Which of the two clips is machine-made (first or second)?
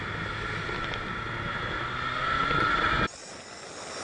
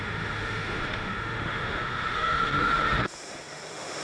second